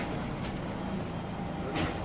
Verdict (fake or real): real